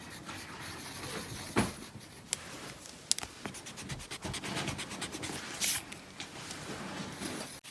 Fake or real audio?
real